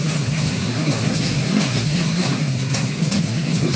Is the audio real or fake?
fake